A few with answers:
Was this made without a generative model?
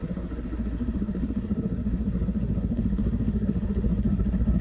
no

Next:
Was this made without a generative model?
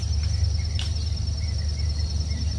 yes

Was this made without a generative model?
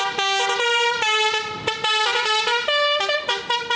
yes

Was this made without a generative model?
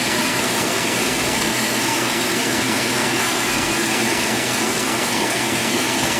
no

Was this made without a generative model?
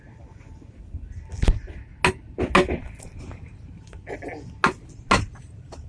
yes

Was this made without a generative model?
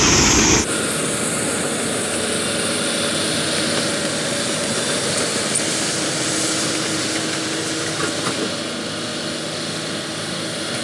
yes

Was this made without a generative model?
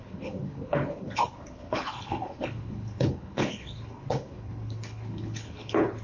no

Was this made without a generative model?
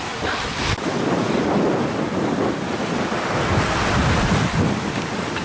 yes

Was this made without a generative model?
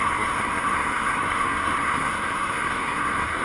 no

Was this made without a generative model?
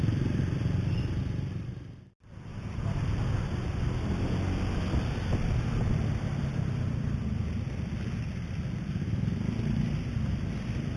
yes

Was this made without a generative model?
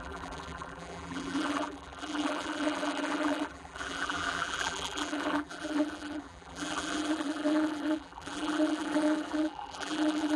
no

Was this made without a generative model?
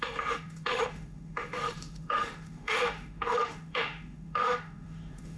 no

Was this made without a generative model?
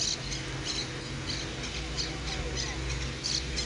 yes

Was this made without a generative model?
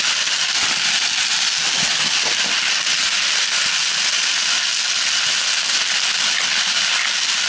yes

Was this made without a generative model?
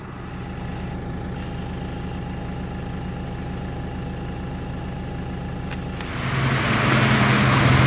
yes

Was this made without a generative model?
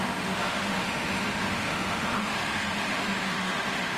no